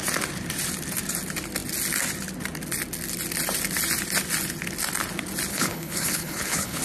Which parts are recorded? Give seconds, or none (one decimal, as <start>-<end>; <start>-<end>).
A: 0.0-5.5